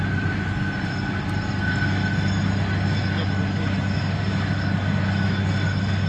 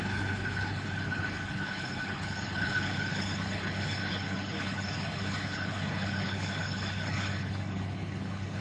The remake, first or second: second